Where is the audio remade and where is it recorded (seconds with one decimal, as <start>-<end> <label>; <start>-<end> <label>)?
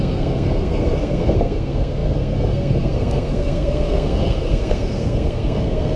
0.0-6.0 remade